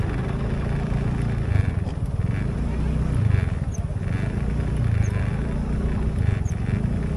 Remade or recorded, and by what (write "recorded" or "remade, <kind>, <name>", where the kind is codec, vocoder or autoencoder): remade, vocoder, BigVGAN v2